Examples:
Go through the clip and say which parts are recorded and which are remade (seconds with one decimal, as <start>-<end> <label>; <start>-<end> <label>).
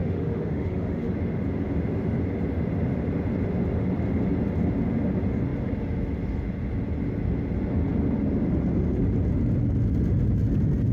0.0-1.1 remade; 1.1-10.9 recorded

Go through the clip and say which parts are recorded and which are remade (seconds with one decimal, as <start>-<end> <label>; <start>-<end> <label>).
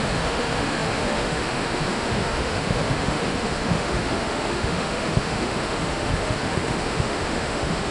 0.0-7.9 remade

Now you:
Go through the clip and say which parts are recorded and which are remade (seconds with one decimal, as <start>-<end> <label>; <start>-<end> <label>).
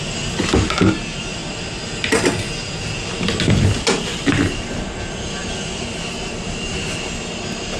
0.0-7.8 recorded